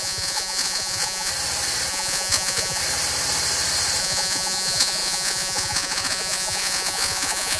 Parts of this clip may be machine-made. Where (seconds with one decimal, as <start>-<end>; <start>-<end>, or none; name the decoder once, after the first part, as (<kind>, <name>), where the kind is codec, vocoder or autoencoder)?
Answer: 0.0-1.3 (vocoder, Vocos); 1.9-2.8; 4.0-7.6